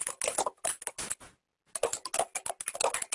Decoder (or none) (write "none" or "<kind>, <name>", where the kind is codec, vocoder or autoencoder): none